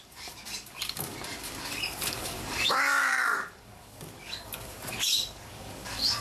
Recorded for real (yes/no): no